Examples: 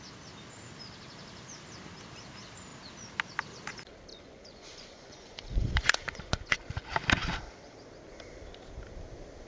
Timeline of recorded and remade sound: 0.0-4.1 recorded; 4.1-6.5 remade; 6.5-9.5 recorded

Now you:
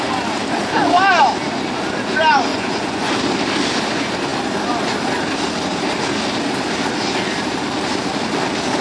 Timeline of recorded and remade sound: 0.0-2.5 recorded; 2.5-3.1 remade; 3.1-8.8 recorded

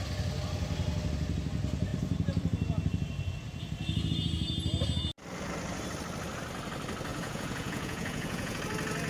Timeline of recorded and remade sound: 0.0-7.1 recorded; 7.1-8.6 remade; 8.6-9.1 recorded

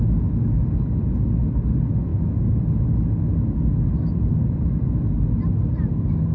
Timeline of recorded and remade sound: 0.0-6.3 recorded

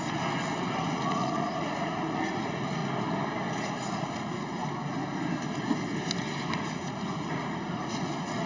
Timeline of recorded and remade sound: 0.0-0.8 recorded; 0.8-2.8 remade; 2.8-3.8 recorded; 3.8-4.6 remade; 4.6-6.5 recorded; 6.5-8.5 remade